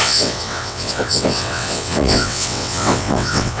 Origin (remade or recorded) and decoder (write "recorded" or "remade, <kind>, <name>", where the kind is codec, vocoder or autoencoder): remade, vocoder, WaveNeXt